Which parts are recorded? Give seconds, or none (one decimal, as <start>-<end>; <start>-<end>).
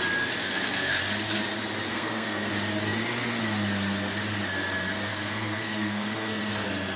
0.0-0.4; 1.0-1.9; 2.5-5.1; 6.4-7.0